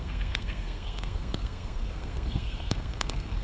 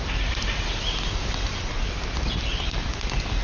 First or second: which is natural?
second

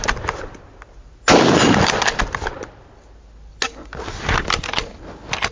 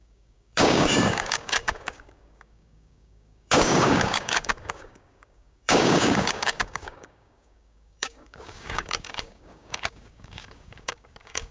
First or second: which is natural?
first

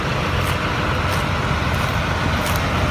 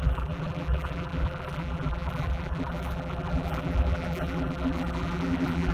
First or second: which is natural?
first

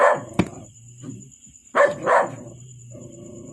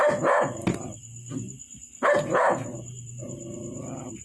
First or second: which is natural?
second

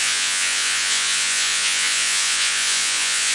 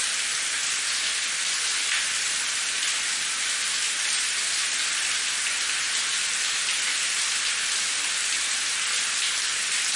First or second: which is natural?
second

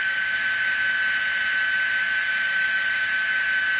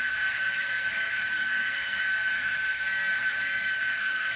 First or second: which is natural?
first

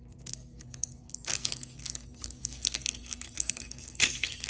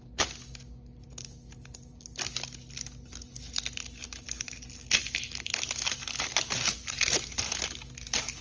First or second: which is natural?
second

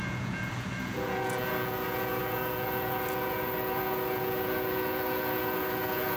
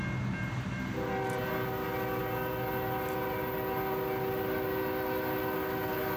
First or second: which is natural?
second